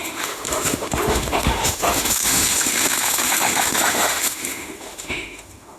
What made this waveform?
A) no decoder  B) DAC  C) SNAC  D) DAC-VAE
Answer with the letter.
D